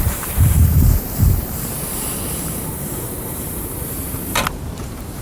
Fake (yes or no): yes